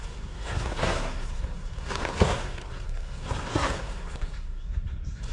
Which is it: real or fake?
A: fake